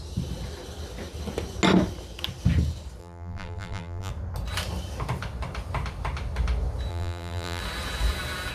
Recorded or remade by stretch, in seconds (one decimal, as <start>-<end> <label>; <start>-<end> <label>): 0.0-3.0 recorded; 3.0-4.1 remade; 4.1-6.9 recorded; 6.9-7.6 remade; 7.6-8.5 recorded